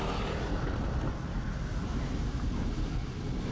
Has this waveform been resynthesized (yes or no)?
no